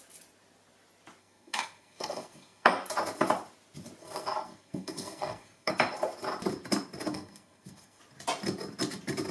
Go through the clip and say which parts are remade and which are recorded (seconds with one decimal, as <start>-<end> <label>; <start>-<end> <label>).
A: 0.0-1.2 recorded; 1.2-2.7 remade; 2.7-4.0 recorded; 4.0-5.7 remade; 5.7-7.1 recorded; 7.1-8.0 remade; 8.0-9.3 recorded